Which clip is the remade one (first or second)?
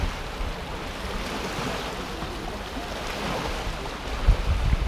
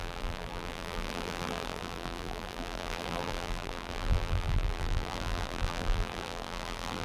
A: second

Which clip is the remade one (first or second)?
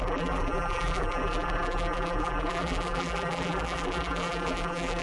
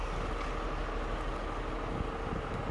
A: first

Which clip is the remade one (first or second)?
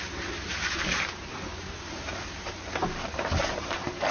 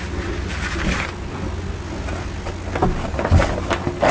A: first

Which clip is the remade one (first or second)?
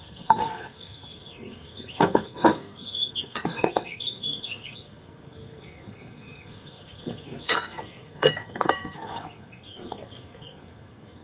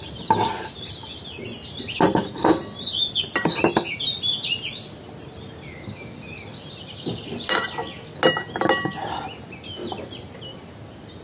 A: first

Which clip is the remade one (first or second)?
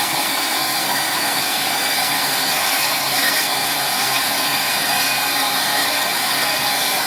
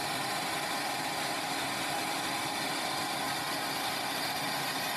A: first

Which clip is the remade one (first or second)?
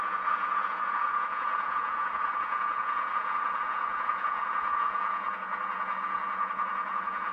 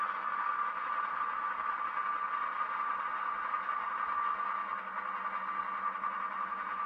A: first